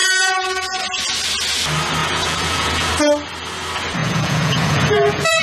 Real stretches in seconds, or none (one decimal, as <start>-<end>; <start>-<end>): 0.8-2.0; 2.9-4.0